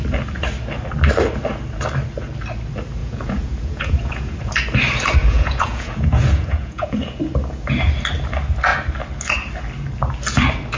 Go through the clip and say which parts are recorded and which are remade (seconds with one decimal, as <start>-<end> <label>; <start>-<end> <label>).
0.0-3.0 recorded; 3.0-4.5 remade; 4.5-5.2 recorded; 5.2-7.2 remade; 7.2-10.8 recorded